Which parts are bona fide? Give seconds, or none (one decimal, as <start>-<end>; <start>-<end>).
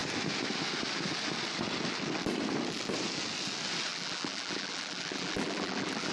0.0-3.9